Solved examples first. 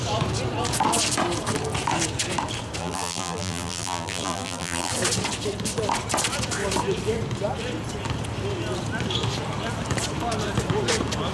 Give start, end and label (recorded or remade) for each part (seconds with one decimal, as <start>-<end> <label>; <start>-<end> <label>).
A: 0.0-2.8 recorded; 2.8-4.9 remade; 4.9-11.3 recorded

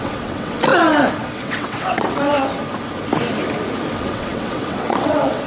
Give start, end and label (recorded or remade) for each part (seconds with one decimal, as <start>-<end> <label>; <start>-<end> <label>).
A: 0.0-0.7 remade; 0.7-1.3 recorded; 1.3-2.3 remade; 2.3-4.0 recorded; 4.0-5.5 remade

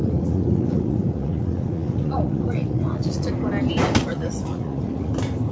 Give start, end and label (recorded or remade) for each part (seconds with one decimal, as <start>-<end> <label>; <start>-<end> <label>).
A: 0.0-3.3 remade; 3.3-4.0 recorded; 4.0-5.1 remade; 5.1-5.5 recorded